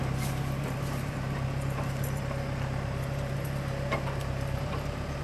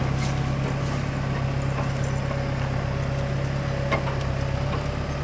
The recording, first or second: second